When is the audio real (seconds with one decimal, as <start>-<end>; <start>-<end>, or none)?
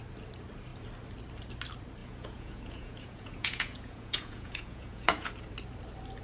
0.0-2.0; 5.3-6.2